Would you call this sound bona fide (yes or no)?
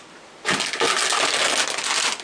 yes